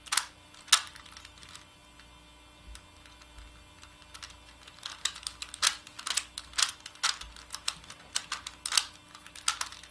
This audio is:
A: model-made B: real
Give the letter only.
B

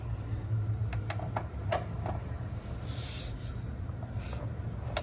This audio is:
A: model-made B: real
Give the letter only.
B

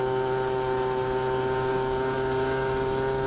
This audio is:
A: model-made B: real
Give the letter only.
B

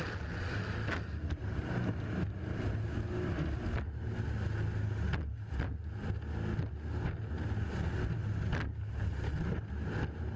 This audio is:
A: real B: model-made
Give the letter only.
A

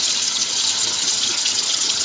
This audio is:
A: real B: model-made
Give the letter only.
B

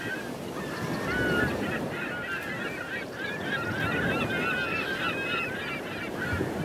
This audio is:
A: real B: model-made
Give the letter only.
A